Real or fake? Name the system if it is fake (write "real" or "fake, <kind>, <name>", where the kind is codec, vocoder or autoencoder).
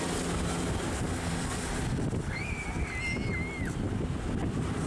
real